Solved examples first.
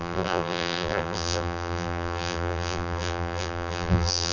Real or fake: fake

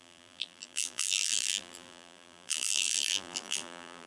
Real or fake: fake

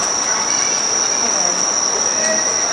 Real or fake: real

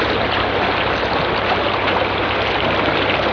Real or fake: real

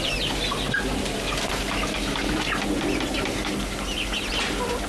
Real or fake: fake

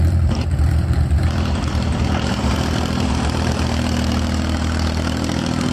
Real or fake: fake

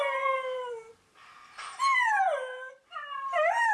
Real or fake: fake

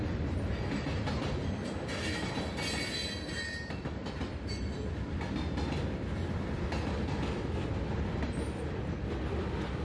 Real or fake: real